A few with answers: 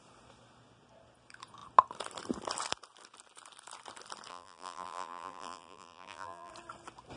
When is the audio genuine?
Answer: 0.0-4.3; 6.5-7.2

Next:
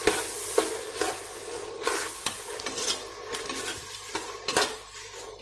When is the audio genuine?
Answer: 0.0-5.4

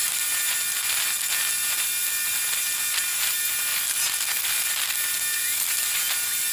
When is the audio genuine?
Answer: 0.0-6.5